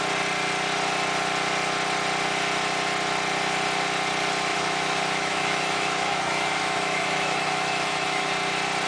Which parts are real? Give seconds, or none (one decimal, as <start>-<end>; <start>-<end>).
0.0-4.5; 8.3-8.9